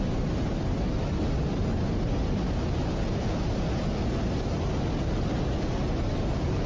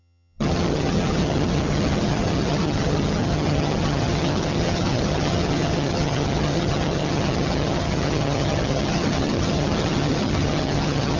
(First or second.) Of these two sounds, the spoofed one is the second